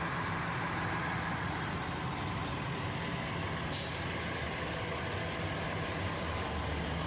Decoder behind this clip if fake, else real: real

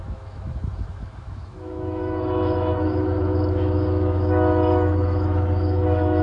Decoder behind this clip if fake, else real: fake, autoencoder, DAC-VAE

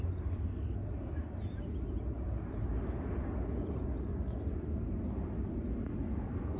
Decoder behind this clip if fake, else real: real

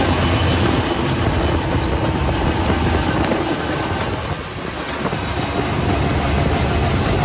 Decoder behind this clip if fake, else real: real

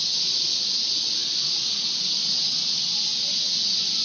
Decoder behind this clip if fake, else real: real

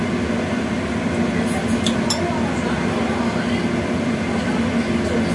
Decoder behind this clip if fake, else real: real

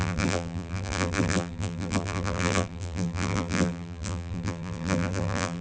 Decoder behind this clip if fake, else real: fake, vocoder, BigVGAN v2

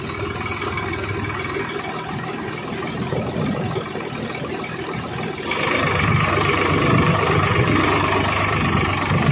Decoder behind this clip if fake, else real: fake, vocoder, BigVGAN v2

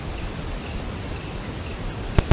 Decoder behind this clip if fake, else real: real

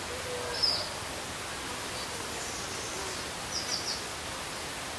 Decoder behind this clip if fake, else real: real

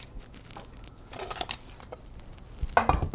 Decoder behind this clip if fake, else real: real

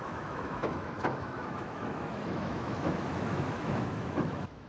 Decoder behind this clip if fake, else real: fake, autoencoder, DAC-VAE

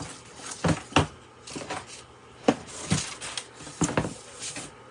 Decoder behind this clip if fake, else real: real